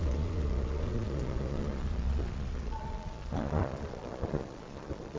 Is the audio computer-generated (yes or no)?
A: yes